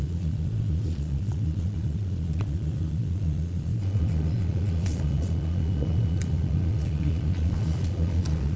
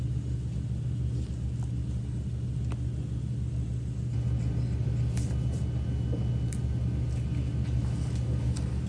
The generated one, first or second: first